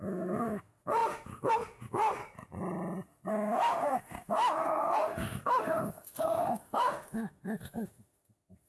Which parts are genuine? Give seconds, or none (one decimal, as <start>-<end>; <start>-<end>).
2.2-3.3